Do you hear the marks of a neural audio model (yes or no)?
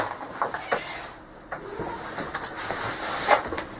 no